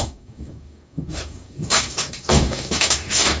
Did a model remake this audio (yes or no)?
yes